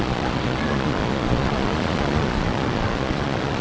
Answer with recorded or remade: remade